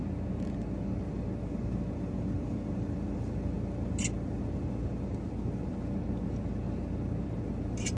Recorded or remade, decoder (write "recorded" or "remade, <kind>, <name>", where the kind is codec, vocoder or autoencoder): recorded